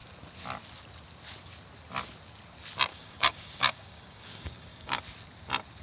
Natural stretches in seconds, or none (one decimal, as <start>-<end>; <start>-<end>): 0.0-2.9; 5.0-5.8